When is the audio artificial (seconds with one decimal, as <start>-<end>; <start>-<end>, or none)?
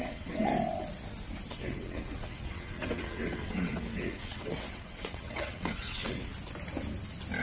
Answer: 0.0-0.5; 1.5-6.3